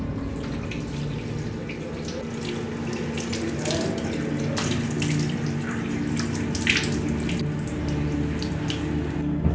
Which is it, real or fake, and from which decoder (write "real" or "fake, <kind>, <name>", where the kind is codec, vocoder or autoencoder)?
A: fake, vocoder, BigVGAN v2